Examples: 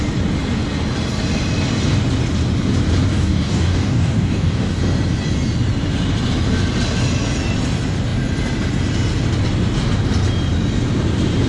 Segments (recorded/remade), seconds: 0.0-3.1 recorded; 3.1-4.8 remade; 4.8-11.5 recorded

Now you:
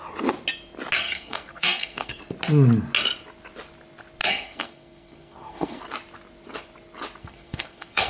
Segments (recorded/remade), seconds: 0.0-1.0 recorded; 1.0-2.2 remade; 2.2-4.2 recorded; 4.2-5.8 remade; 5.8-7.2 recorded; 7.2-8.1 remade

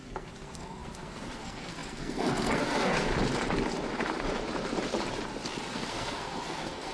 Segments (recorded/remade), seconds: 0.0-3.1 remade; 3.1-5.7 recorded; 5.7-6.9 remade

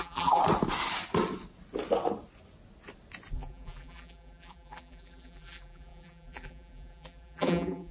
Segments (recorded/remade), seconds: 0.0-0.4 remade; 0.4-3.3 recorded; 3.3-7.9 remade

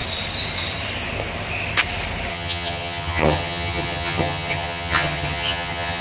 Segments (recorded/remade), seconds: 0.0-2.3 recorded; 2.3-6.0 remade